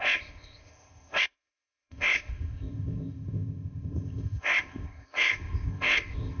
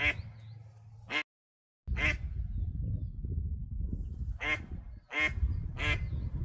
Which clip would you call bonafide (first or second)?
second